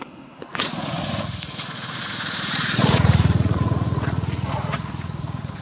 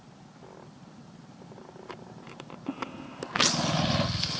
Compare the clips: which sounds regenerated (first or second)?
first